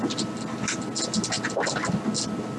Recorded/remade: recorded